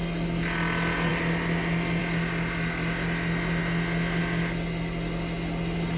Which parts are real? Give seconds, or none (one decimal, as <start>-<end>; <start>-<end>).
0.0-6.0

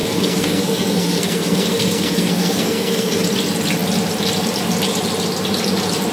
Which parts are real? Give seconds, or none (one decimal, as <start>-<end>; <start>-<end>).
3.2-6.1